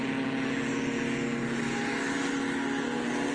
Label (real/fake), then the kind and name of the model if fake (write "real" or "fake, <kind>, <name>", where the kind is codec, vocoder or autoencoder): real